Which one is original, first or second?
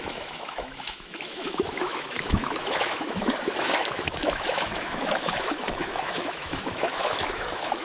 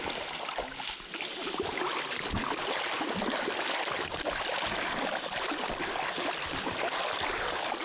second